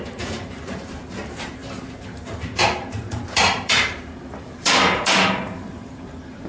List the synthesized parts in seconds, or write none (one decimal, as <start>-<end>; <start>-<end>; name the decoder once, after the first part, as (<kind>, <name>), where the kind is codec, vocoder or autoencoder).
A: 0.0-6.5 (vocoder, BigVGAN v2)